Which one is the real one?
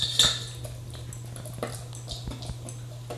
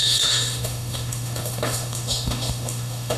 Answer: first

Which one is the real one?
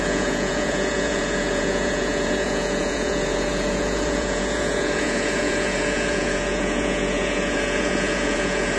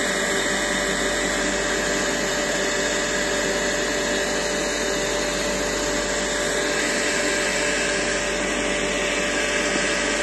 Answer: second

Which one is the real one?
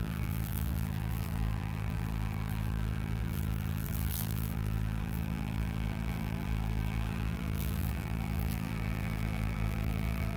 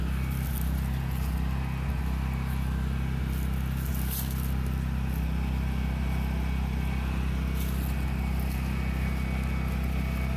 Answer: second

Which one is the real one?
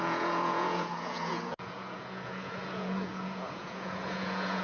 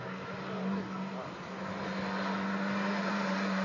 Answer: second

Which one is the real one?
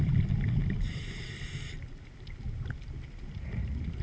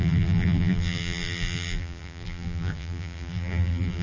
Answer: first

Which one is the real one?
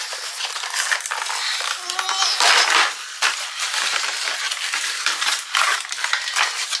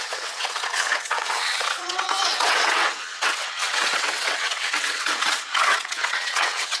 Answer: first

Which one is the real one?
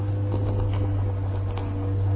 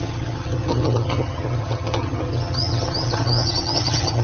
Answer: first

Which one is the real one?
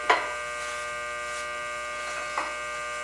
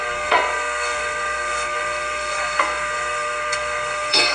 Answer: first